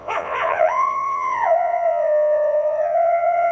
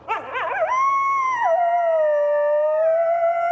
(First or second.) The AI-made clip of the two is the first